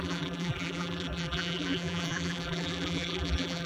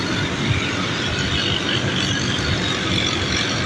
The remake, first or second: first